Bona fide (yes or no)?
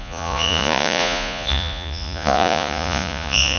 no